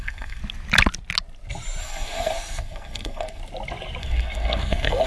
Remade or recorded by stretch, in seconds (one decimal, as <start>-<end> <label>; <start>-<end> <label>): 0.0-0.4 remade; 0.4-1.8 recorded; 1.8-3.4 remade; 3.4-4.0 recorded; 4.0-5.1 remade